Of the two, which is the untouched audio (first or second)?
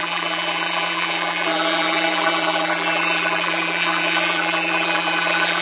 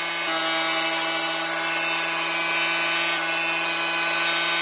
second